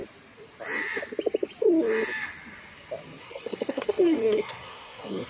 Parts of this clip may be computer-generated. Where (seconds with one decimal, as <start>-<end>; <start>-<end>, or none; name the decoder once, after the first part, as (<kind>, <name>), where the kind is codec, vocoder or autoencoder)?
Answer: 3.2-5.3 (codec, SNAC)